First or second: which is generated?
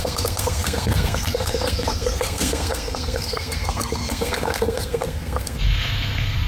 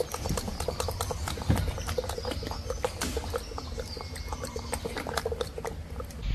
first